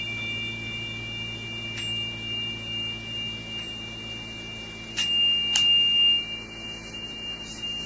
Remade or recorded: recorded